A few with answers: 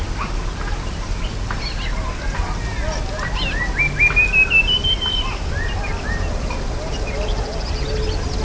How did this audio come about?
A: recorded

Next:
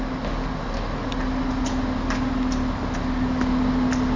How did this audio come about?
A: recorded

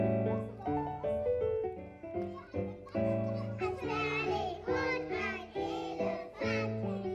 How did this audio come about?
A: recorded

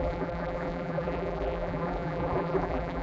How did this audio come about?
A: remade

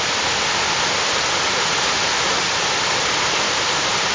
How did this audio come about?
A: recorded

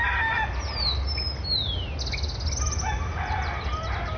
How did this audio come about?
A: recorded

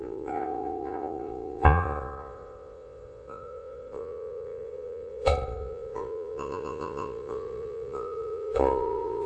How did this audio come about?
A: remade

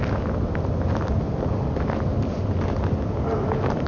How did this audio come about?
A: recorded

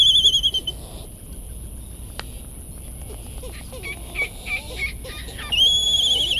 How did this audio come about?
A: recorded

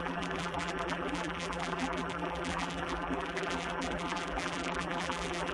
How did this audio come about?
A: remade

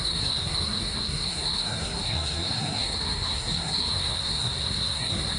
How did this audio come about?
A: remade